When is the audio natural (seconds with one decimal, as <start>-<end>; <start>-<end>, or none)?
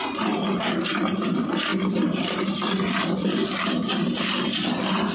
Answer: 0.0-1.7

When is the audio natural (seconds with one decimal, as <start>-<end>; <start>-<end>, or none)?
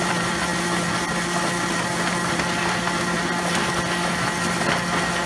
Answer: 0.0-5.3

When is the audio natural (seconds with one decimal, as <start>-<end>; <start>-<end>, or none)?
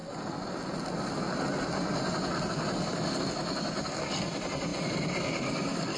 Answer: 0.0-6.0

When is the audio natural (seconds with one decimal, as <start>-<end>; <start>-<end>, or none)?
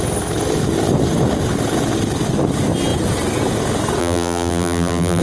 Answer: 0.0-4.0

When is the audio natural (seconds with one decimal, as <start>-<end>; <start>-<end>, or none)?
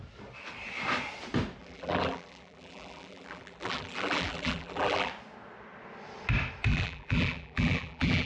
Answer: 0.0-1.6; 5.1-6.7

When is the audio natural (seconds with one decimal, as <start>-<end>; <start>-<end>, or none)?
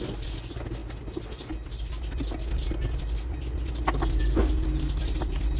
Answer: 0.0-4.4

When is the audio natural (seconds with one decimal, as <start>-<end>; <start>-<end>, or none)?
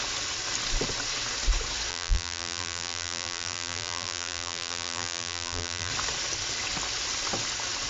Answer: 0.0-1.9; 5.9-7.9